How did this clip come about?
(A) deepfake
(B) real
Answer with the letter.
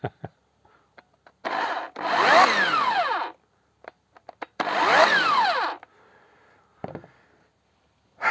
A